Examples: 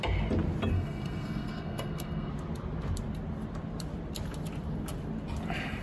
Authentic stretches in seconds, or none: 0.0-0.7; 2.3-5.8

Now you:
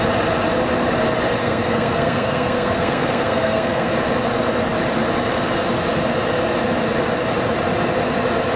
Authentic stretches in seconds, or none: 0.0-1.4; 3.9-8.6

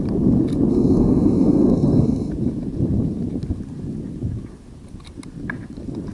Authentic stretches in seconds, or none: 0.0-0.7; 2.3-6.1